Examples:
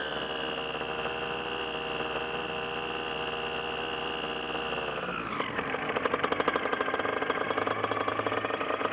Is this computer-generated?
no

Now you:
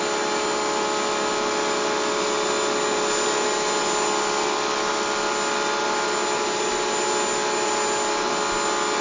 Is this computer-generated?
no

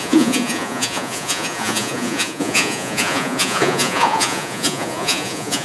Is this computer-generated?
yes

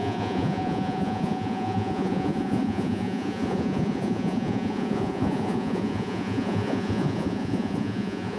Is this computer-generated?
yes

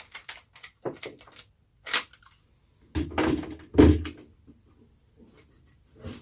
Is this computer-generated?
no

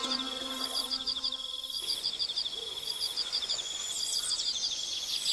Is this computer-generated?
yes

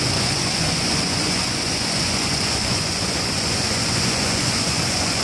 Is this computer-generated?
yes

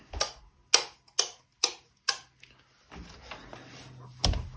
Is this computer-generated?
no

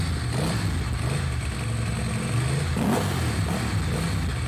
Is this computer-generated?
no